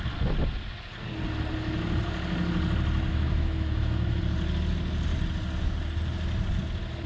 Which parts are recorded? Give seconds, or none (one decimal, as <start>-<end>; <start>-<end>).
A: 0.0-3.1; 4.2-7.1